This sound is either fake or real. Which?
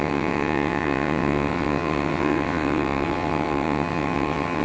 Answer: fake